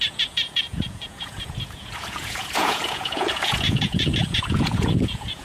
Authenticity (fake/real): fake